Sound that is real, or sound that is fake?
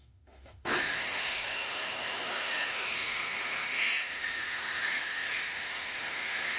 fake